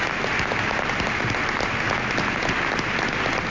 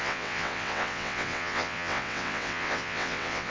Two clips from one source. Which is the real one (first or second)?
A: first